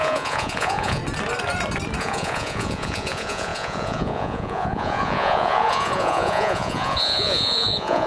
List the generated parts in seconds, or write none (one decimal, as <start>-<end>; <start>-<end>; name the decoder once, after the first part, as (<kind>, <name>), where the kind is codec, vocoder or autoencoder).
0.0-1.0 (vocoder, Vocos); 2.0-8.1